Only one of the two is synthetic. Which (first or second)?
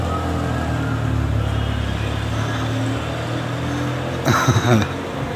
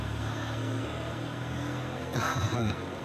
second